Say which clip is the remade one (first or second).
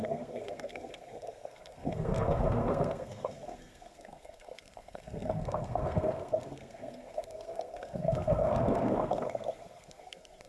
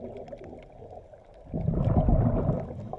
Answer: first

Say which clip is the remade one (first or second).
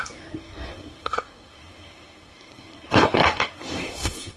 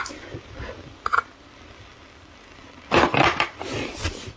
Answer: first